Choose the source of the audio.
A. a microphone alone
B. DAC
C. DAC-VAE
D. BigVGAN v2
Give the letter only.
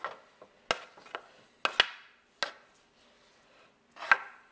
A